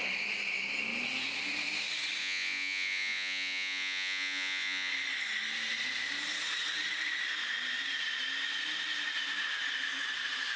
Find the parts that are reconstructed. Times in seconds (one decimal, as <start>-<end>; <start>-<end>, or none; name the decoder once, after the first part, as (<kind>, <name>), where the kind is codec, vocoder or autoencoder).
2.2-4.9 (vocoder, Vocos)